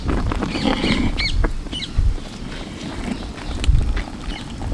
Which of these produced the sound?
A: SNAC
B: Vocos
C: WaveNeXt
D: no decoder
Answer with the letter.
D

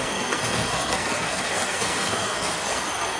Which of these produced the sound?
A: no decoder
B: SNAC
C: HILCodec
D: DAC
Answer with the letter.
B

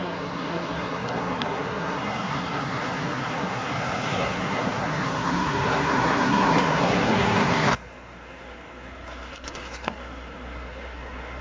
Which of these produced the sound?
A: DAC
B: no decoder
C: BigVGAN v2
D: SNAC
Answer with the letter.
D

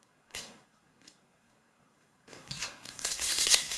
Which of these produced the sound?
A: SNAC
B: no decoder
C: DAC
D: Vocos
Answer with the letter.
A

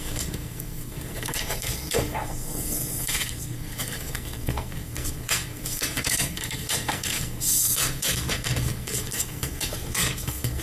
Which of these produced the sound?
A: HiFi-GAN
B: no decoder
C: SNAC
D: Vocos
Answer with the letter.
C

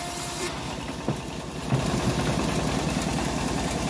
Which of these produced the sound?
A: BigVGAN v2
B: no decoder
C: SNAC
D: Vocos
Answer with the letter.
B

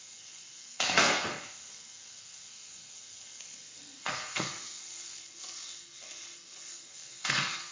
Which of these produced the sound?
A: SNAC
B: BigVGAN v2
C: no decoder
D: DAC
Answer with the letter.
A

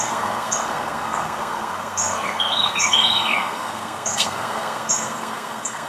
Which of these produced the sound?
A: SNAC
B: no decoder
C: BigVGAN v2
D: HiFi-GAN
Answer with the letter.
A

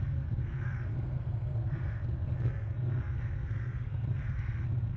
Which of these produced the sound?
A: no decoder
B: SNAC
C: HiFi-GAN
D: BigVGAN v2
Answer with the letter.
B